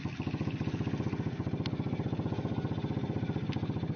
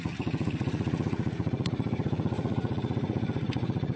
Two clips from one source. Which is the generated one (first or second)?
second